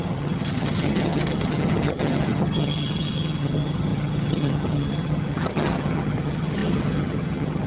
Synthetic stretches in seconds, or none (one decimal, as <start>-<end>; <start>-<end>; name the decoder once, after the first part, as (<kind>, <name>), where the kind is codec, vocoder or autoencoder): 0.0-7.7 (vocoder, HiFi-GAN)